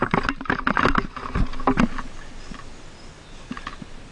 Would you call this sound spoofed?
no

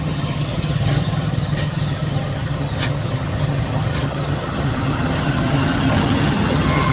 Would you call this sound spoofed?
yes